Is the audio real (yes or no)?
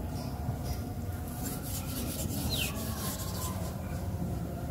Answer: no